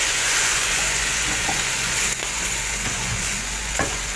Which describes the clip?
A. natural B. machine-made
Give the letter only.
B